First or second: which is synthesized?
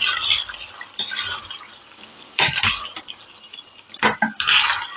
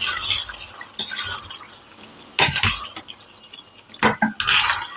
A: first